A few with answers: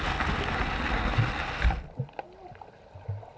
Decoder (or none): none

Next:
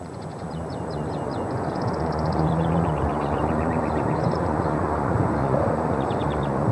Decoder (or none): vocoder, Vocos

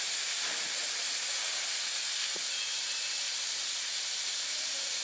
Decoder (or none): none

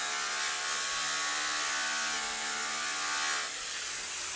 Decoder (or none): none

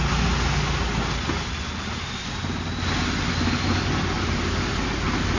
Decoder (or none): none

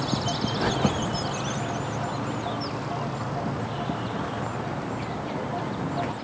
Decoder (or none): none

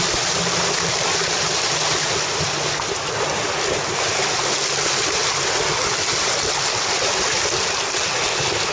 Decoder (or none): none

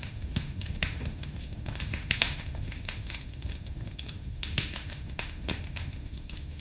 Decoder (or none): autoencoder, DAC-VAE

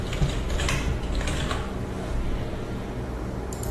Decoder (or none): none